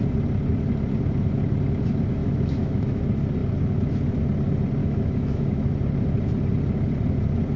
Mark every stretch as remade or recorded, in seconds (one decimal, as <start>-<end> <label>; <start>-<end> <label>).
0.0-2.2 recorded; 2.2-3.0 remade; 3.0-4.8 recorded; 4.8-5.7 remade; 5.7-7.6 recorded